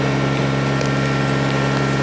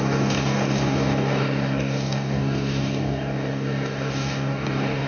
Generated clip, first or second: second